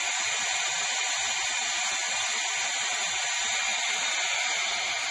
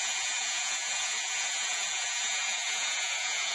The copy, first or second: second